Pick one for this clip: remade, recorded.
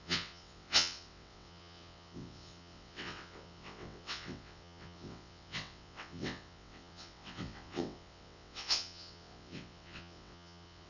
remade